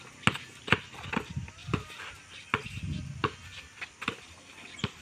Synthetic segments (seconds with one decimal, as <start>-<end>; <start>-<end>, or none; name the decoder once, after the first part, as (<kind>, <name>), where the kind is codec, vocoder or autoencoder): none